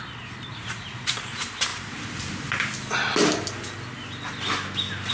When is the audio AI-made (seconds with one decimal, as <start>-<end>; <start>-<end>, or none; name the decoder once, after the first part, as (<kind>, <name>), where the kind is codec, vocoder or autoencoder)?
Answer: 0.5-1.2 (vocoder, Vocos)